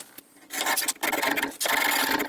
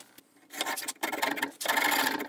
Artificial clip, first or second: second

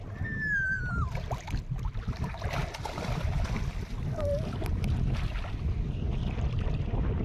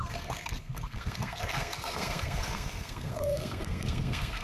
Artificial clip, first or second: second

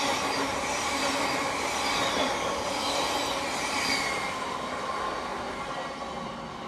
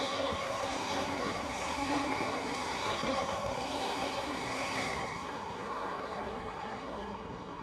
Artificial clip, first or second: second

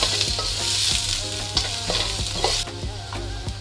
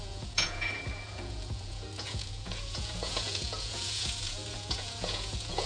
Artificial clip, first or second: second